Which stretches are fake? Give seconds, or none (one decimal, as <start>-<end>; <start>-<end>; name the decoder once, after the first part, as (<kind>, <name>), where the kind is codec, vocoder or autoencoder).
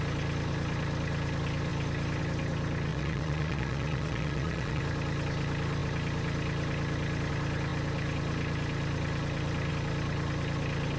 2.9-4.8 (vocoder, Vocos)